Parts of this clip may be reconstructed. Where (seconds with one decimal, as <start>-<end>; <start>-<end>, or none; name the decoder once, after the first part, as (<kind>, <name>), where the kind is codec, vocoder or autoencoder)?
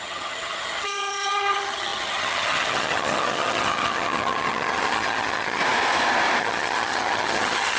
0.0-5.6 (vocoder, HiFi-GAN); 6.4-7.8